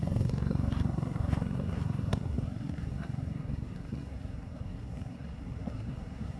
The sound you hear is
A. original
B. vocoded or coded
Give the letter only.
B